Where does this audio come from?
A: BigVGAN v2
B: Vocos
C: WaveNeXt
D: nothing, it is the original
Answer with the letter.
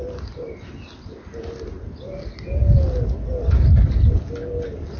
D